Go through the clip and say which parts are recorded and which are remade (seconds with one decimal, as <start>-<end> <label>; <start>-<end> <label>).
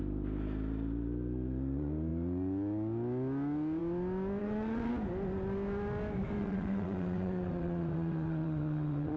0.0-4.4 recorded; 4.4-4.9 remade; 4.9-6.4 recorded; 6.4-9.2 remade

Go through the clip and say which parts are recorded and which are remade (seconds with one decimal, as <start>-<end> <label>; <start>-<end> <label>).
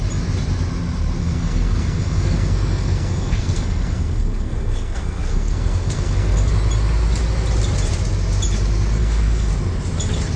0.0-1.2 recorded; 1.2-6.5 remade; 6.5-9.0 recorded; 9.0-9.5 remade; 9.5-10.4 recorded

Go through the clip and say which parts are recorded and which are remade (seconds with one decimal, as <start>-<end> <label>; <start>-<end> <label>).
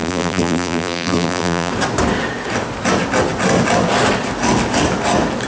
0.0-1.7 remade; 1.7-5.5 recorded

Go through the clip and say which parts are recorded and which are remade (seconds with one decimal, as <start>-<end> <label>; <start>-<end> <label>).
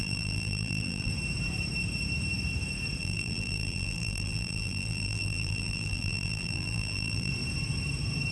0.0-1.1 remade; 1.1-3.0 recorded; 3.0-7.3 remade; 7.3-8.3 recorded